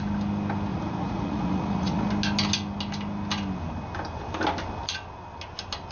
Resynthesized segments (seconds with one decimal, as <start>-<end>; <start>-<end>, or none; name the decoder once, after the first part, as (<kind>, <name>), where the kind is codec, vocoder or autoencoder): 0.7-2.1 (vocoder, Vocos)